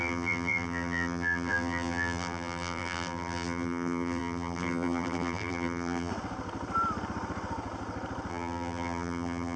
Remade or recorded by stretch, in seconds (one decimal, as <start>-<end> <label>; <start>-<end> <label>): 0.0-6.1 remade; 6.1-8.3 recorded; 8.3-9.6 remade